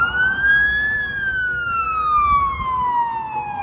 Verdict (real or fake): real